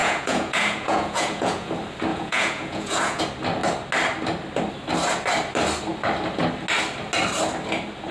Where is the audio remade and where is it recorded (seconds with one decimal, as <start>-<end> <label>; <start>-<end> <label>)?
0.0-1.7 remade; 1.7-2.1 recorded; 2.1-3.2 remade; 3.2-8.1 recorded